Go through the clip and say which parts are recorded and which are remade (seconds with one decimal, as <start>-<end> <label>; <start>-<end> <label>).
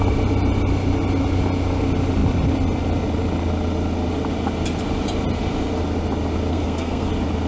0.0-6.5 recorded; 6.5-7.1 remade; 7.1-7.5 recorded